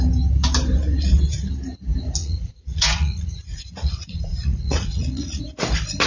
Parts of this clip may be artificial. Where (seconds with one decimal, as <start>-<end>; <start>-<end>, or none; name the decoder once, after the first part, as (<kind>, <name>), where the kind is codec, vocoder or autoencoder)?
2.2-5.4 (vocoder, Vocos)